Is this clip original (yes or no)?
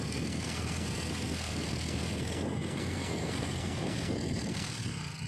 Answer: no